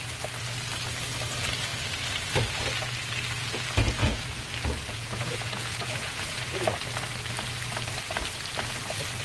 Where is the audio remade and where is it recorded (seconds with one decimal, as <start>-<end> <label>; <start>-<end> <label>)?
0.0-4.0 recorded; 4.0-4.5 remade; 4.5-4.9 recorded; 4.9-6.8 remade; 6.8-9.2 recorded